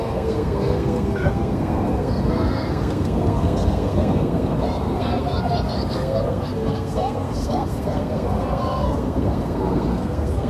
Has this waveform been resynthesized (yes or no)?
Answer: yes